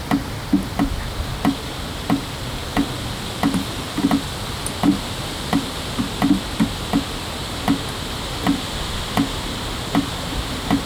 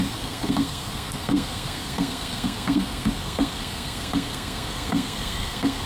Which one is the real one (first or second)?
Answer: first